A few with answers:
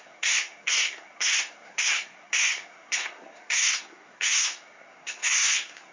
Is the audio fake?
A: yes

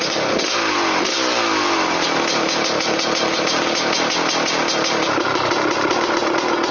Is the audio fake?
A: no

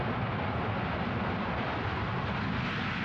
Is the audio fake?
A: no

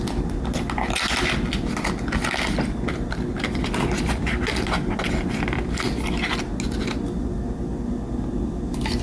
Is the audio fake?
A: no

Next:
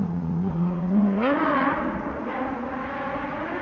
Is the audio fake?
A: yes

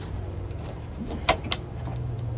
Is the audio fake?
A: yes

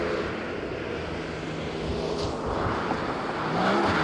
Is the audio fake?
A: no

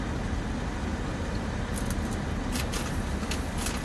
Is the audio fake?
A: no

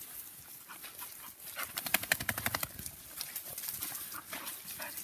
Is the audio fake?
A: no